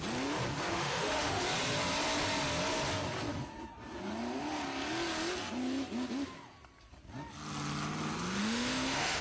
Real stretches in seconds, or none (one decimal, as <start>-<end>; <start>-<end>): 0.0-0.7; 1.4-8.4